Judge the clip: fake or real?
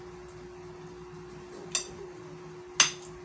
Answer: real